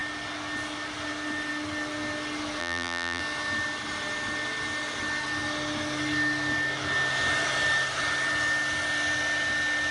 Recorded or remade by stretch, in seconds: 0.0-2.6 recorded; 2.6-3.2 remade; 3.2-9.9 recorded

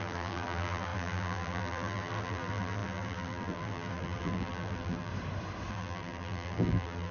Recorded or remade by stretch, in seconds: 0.0-5.1 remade; 5.1-5.7 recorded; 5.7-7.1 remade